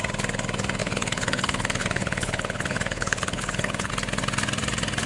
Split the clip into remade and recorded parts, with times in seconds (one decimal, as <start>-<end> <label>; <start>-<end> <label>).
0.0-0.8 recorded; 0.8-3.9 remade; 3.9-5.1 recorded